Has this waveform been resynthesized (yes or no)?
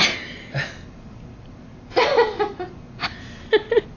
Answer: no